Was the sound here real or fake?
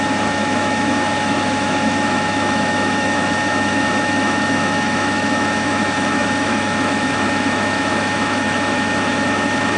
fake